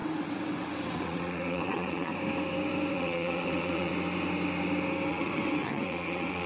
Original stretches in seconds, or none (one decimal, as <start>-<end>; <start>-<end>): 2.1-2.9; 3.9-5.1